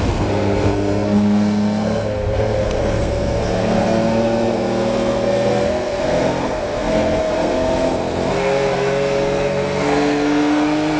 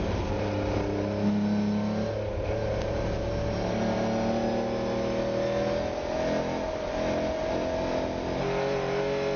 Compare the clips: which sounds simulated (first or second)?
first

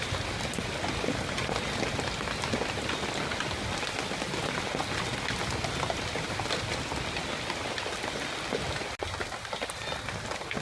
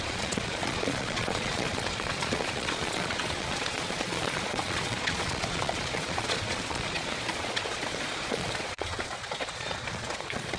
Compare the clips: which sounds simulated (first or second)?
second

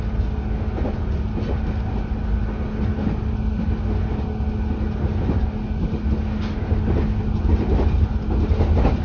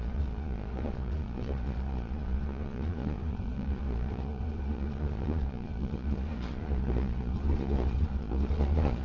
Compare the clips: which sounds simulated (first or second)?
second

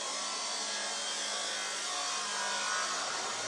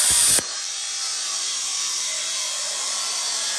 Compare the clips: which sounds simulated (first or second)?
second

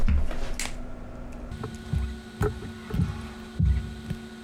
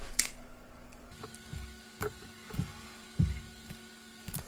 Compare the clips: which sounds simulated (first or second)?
second